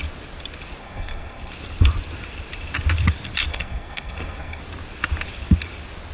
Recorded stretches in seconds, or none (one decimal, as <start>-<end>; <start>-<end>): 0.0-0.8; 1.5-3.5; 4.6-6.1